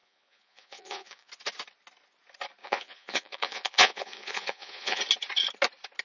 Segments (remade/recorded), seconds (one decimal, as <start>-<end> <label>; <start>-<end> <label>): 0.0-1.3 remade; 1.3-2.6 recorded; 2.6-5.0 remade; 5.0-6.0 recorded